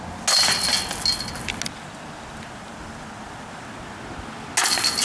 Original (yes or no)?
yes